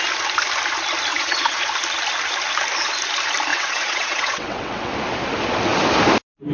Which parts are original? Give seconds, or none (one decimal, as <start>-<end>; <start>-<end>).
0.0-1.1; 1.6-3.5; 4.9-6.5